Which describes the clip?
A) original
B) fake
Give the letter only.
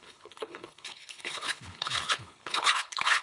B